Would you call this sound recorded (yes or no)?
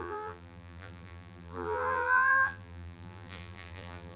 no